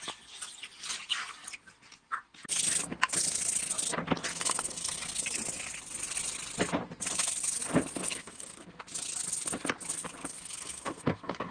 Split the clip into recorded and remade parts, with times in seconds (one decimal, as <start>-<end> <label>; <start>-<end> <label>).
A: 0.0-4.3 recorded; 4.3-5.0 remade; 5.0-8.1 recorded; 8.1-8.8 remade; 8.8-10.2 recorded; 10.2-11.5 remade